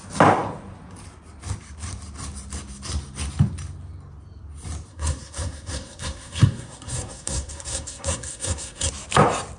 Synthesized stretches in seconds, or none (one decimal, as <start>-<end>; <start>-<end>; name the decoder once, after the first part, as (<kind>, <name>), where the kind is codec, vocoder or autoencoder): 4.9-8.9 (codec, SNAC)

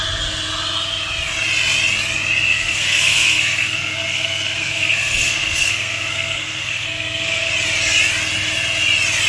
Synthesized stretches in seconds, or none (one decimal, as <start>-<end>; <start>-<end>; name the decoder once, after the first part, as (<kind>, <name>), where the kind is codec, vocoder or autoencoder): 2.5-7.5 (codec, SNAC)

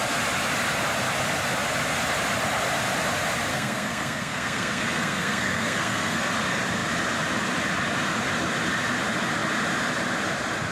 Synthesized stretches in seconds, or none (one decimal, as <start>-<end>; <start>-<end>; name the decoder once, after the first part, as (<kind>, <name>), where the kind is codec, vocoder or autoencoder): 3.5-6.3 (codec, SNAC)

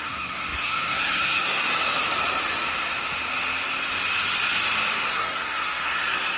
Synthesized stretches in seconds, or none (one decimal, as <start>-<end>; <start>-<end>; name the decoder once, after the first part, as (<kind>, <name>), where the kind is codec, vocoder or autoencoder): 0.0-1.7 (codec, SNAC); 5.0-6.4

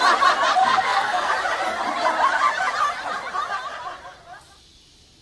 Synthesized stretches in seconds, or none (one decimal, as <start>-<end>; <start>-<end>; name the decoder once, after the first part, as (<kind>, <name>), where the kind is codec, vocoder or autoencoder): 0.6-1.3 (codec, SNAC)

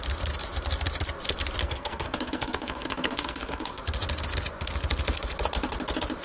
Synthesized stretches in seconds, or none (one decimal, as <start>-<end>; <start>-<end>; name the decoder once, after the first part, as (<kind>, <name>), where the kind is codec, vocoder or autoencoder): 1.6-3.8 (codec, SNAC)